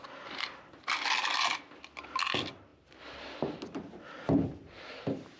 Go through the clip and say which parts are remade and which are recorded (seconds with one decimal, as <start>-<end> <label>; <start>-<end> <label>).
0.0-5.4 recorded

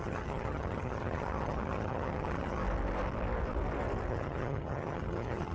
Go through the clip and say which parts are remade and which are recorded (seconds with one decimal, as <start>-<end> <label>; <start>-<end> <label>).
0.0-2.6 remade; 2.6-4.1 recorded; 4.1-5.5 remade

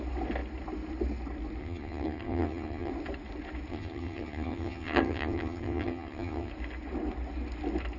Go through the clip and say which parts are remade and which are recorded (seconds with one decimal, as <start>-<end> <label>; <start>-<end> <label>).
0.0-1.6 recorded; 1.6-2.9 remade; 2.9-3.7 recorded; 3.7-6.5 remade; 6.5-8.0 recorded